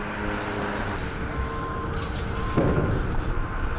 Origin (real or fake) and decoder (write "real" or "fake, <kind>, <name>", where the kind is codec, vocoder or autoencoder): real